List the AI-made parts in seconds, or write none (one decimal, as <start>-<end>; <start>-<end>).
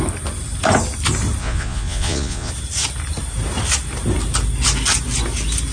1.4-2.5